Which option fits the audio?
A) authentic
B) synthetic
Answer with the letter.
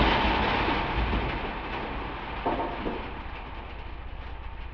A